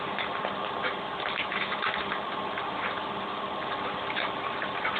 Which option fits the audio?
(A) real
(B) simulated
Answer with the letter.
A